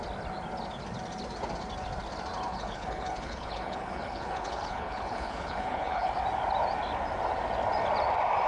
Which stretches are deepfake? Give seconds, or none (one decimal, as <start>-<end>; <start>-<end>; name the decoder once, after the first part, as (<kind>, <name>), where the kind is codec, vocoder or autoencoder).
2.5-6.1 (codec, HILCodec)